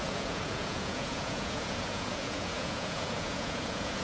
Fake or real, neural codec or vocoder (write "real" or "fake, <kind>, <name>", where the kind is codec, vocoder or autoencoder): fake, vocoder, Vocos